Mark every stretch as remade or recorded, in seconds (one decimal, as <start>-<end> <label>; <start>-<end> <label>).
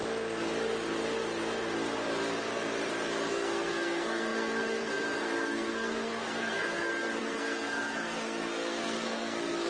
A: 0.0-3.3 recorded; 3.3-9.7 remade